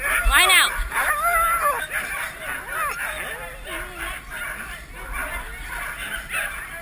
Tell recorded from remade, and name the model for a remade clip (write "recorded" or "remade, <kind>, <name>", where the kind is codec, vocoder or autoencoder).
recorded